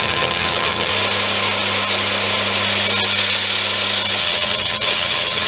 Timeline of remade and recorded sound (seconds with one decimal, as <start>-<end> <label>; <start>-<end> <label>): 0.0-0.9 remade; 0.9-4.2 recorded; 4.2-5.5 remade